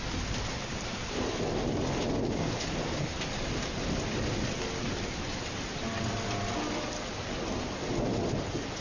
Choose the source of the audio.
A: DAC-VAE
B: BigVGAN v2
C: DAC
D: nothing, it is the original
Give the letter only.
D